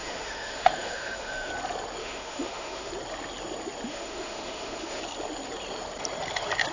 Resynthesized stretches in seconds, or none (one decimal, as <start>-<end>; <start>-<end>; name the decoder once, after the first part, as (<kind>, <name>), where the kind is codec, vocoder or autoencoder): 0.0-1.5 (autoencoder, DAC-VAE); 2.0-2.9; 3.9-5.0